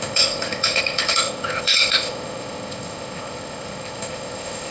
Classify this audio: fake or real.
fake